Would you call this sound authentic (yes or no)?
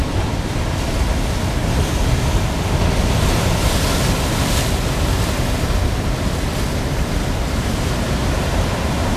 yes